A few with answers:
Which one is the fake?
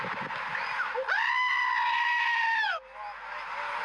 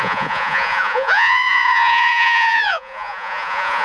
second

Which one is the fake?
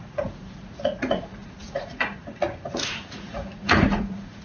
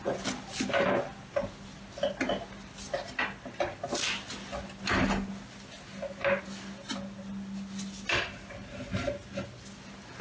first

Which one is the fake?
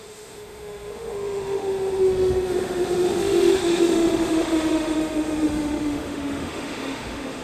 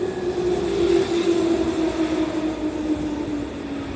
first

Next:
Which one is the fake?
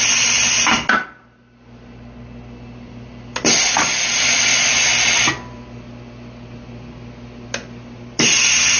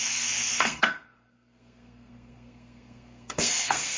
second